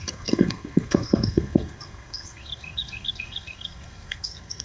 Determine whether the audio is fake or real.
fake